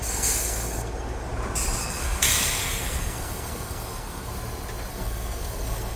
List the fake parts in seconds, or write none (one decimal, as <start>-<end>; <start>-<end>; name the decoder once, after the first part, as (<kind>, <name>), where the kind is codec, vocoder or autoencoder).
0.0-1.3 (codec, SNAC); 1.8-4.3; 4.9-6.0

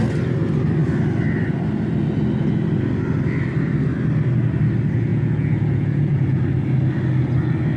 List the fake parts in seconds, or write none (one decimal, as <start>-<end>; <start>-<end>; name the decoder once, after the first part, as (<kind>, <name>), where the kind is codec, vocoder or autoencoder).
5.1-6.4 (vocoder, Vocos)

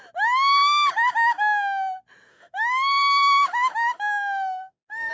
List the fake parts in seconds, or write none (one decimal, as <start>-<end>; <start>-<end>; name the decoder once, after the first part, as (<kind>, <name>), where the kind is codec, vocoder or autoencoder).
2.3-5.1 (autoencoder, DAC-VAE)

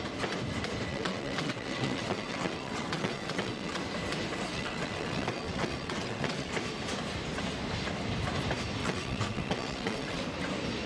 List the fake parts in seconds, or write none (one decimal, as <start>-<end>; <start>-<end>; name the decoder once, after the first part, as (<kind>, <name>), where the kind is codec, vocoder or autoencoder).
0.9-3.8 (vocoder, WaveNeXt); 4.5-6.5; 8.8-10.2

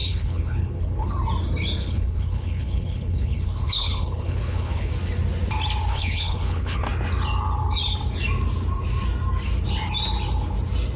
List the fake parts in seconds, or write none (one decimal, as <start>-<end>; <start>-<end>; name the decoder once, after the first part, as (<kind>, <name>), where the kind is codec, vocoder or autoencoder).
0.0-1.1 (codec, HILCodec); 1.8-4.9; 5.9-6.8

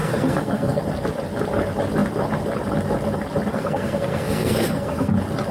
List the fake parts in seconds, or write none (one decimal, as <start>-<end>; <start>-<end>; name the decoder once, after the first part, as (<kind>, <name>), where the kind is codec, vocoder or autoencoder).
0.0-0.8 (codec, SNAC); 3.5-5.1